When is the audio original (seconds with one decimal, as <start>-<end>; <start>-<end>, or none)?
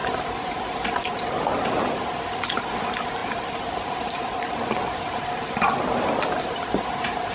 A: 0.0-7.3